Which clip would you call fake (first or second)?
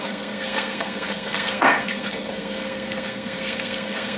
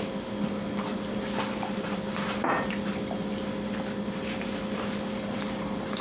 first